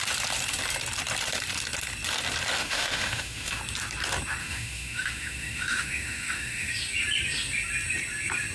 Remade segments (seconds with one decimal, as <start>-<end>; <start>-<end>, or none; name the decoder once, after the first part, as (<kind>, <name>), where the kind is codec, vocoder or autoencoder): 2.6-3.6 (autoencoder, DAC-VAE); 4.4-6.7